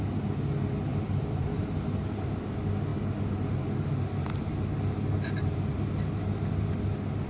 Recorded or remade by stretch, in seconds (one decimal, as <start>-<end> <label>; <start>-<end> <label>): 0.0-0.9 recorded; 0.9-1.7 remade; 1.7-7.3 recorded